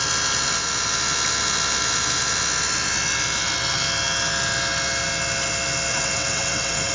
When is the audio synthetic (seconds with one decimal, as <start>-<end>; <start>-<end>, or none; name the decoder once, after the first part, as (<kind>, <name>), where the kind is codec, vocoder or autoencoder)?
5.9-6.9 (vocoder, WaveNeXt)